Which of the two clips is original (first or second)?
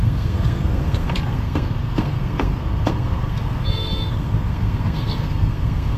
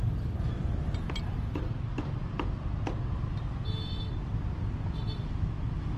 second